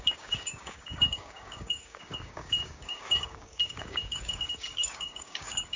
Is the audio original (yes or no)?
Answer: no